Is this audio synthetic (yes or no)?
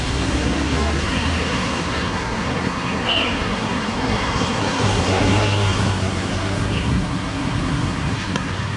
yes